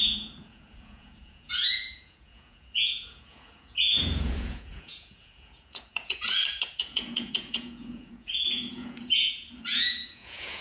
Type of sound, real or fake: fake